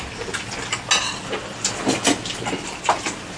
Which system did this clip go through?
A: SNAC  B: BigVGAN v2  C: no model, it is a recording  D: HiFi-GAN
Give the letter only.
C